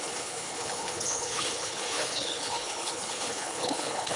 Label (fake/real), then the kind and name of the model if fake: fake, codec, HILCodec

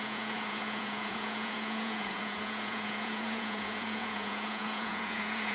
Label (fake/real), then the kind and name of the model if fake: fake, vocoder, Vocos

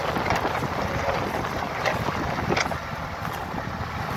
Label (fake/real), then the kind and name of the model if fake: real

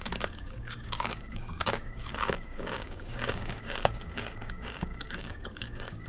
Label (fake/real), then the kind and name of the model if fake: fake, codec, DAC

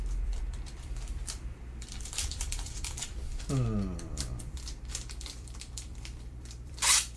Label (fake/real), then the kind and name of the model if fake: fake, vocoder, BigVGAN v2